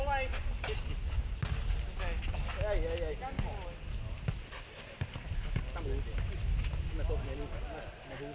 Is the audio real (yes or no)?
yes